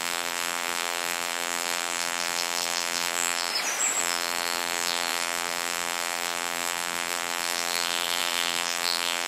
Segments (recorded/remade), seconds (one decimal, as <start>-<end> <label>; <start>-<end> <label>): 0.0-3.5 remade; 3.5-4.0 recorded; 4.0-9.3 remade